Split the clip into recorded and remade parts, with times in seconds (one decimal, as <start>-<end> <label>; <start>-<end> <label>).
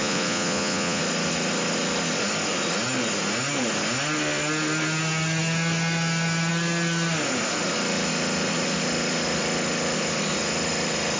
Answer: 0.0-1.0 remade; 1.0-11.2 recorded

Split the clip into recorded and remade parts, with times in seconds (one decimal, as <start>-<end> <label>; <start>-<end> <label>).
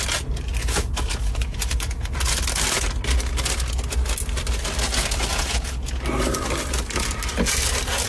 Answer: 0.0-0.6 recorded; 0.6-2.4 remade; 2.4-5.3 recorded; 5.3-6.0 remade; 6.0-8.1 recorded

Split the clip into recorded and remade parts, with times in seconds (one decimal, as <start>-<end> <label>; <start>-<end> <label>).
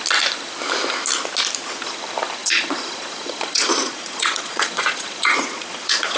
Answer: 0.0-2.4 recorded; 2.4-6.2 remade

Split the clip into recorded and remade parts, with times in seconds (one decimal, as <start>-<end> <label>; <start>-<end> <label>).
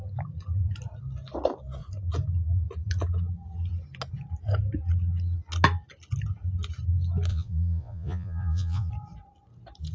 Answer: 0.0-7.3 recorded; 7.3-8.9 remade; 8.9-9.9 recorded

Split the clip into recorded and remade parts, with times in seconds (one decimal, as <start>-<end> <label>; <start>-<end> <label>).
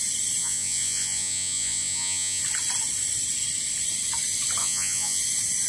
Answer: 0.0-0.4 recorded; 0.4-2.4 remade; 2.4-4.6 recorded; 4.6-5.2 remade; 5.2-5.7 recorded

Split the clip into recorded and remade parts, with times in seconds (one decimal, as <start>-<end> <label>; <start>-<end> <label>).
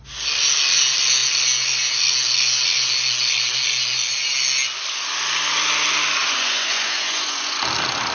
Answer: 0.0-6.2 recorded; 6.2-7.6 remade; 7.6-8.1 recorded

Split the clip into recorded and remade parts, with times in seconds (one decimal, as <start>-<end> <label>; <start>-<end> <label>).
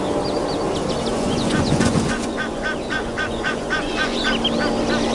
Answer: 0.0-1.1 recorded; 1.1-4.2 remade; 4.2-5.1 recorded